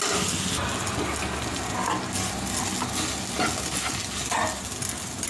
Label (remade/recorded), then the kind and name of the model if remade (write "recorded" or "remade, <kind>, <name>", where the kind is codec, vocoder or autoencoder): recorded